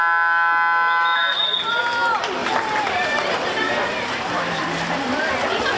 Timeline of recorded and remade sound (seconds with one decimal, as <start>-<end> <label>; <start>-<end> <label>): 0.0-1.2 recorded; 1.2-1.8 remade; 1.8-2.4 recorded; 2.4-5.1 remade; 5.1-5.8 recorded